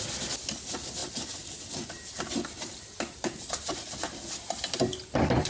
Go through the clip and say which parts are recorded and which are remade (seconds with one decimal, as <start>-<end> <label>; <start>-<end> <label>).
0.0-5.5 recorded